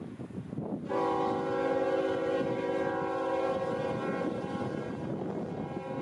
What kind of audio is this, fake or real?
real